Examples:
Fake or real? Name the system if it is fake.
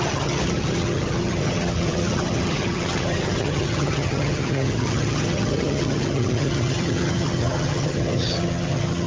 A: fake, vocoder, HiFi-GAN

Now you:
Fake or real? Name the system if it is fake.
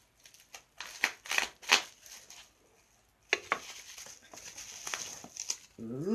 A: real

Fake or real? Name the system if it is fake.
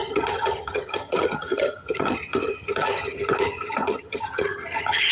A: fake, vocoder, HiFi-GAN